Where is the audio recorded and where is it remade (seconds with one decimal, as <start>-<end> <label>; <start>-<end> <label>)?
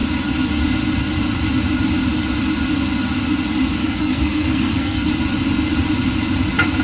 0.0-3.8 recorded; 3.8-5.1 remade; 5.1-6.8 recorded